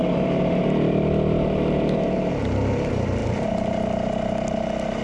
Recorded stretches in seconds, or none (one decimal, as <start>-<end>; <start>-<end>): 2.3-3.2; 3.8-5.0